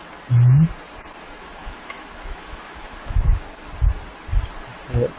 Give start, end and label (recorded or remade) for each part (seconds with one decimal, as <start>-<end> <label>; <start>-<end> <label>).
0.0-1.6 recorded; 1.6-3.6 remade; 3.6-5.2 recorded